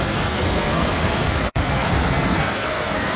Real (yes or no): no